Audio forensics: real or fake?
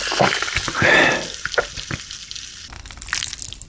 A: real